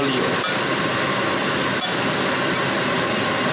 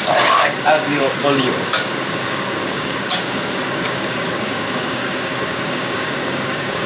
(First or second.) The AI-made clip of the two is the second